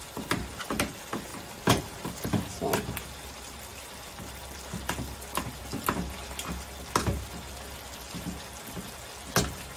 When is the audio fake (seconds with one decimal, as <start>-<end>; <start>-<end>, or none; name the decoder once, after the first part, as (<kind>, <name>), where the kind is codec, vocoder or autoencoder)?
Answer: none